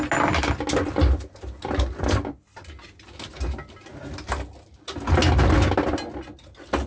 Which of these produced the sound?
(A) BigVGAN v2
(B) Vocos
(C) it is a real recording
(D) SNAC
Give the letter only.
C